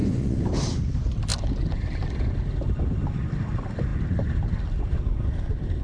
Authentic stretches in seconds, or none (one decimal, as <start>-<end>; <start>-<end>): 0.5-5.8